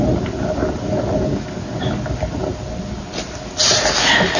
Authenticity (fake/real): real